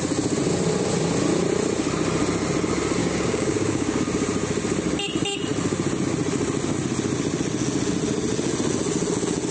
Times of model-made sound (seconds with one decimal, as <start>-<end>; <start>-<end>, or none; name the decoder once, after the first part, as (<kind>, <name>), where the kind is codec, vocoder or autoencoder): 3.0-4.0 (codec, DAC)